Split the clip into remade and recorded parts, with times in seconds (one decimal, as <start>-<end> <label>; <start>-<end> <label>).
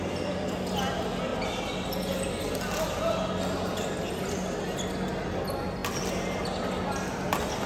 0.0-7.7 recorded